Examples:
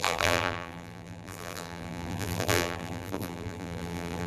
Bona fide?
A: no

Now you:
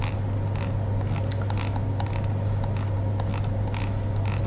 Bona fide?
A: yes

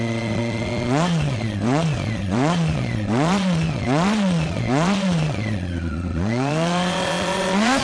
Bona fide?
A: no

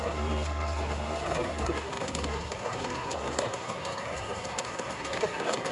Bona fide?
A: no